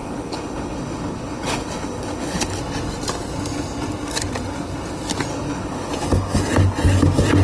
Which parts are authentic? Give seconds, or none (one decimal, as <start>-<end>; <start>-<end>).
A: 2.6-5.3; 5.9-7.4